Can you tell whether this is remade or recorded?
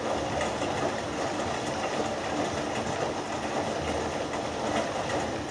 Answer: recorded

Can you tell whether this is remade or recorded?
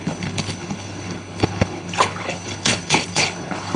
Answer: remade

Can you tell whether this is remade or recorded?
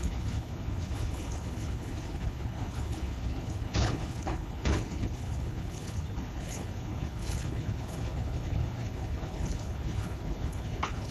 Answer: remade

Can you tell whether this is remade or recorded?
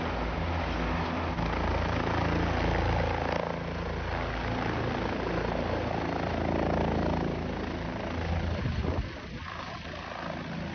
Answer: recorded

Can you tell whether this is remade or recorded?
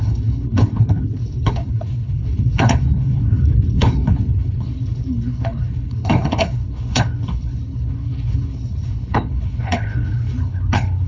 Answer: remade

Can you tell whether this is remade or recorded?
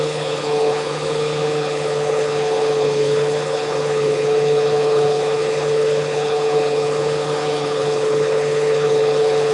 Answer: remade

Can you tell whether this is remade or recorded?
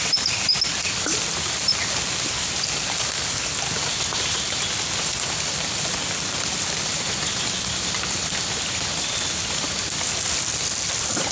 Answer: recorded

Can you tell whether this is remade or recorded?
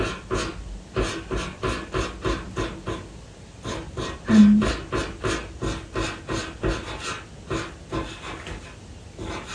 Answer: recorded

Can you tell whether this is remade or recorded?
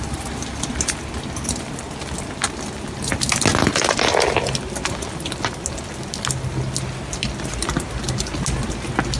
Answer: recorded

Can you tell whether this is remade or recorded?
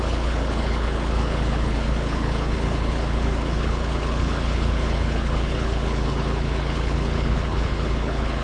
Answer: remade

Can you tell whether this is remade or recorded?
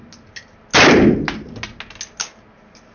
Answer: recorded